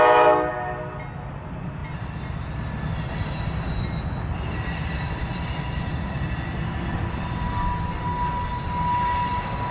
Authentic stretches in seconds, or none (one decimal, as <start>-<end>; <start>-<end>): 0.0-9.7

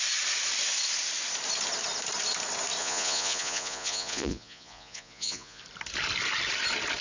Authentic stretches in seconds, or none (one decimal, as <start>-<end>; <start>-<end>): 0.0-2.8; 5.6-7.0